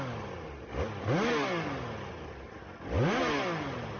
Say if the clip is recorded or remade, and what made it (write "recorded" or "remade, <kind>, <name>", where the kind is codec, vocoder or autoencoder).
recorded